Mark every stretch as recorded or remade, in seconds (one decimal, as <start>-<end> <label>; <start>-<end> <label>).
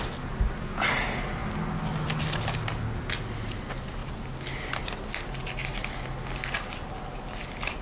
0.0-7.8 recorded